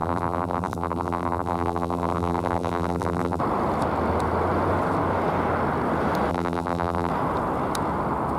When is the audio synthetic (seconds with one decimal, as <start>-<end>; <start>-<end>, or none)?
0.0-3.4; 6.3-7.1